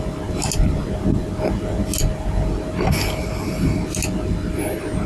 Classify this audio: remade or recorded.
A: recorded